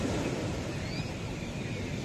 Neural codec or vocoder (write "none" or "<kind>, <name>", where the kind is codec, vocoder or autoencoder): none